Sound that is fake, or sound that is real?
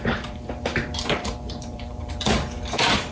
fake